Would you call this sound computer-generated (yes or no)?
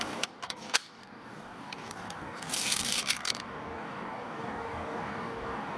yes